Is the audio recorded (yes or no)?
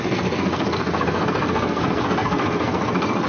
no